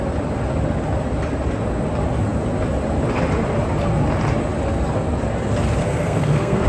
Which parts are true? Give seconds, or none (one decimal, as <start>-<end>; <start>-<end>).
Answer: 0.0-5.8